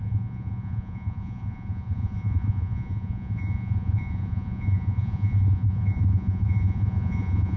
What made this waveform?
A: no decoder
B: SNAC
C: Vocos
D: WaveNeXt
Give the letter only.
C